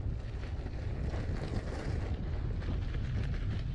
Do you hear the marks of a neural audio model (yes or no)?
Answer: no